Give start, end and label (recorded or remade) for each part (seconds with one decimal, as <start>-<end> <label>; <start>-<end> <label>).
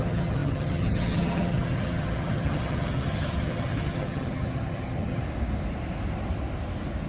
0.0-5.2 remade; 5.2-7.1 recorded